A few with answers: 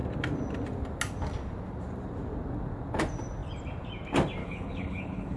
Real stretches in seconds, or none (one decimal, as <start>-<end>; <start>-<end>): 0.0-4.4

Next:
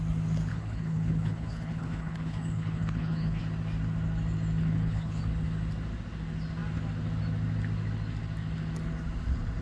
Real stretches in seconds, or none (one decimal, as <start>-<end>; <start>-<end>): 0.0-0.5; 3.4-4.6; 5.2-9.6

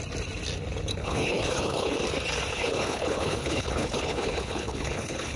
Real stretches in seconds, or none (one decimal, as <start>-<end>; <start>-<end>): 0.0-1.0; 2.0-2.5

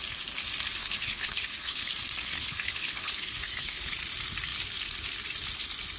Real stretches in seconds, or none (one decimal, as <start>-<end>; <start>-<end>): 0.0-0.8; 1.9-2.3; 3.9-6.0

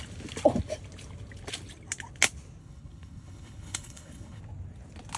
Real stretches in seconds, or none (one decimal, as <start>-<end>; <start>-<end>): 0.0-2.6; 4.4-5.2

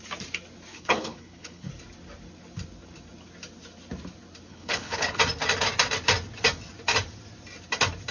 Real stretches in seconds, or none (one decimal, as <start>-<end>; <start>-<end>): 0.0-0.7; 1.7-4.5; 5.2-8.1

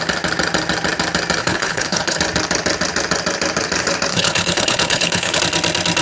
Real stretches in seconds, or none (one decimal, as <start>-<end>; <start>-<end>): 0.0-1.4; 2.2-4.1; 5.4-6.0

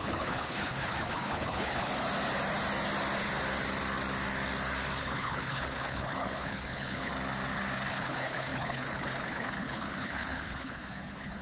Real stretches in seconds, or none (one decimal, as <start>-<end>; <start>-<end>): 1.9-5.0; 7.1-7.9